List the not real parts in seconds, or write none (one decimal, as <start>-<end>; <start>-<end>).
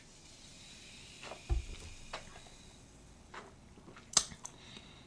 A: none